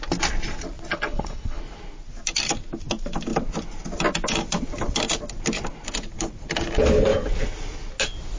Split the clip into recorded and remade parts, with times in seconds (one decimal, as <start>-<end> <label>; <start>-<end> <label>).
0.0-0.9 recorded; 0.9-1.6 remade; 1.6-8.4 recorded